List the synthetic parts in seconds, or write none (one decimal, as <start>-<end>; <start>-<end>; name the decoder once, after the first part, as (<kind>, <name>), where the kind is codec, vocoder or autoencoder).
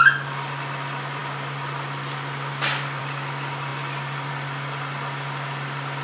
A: none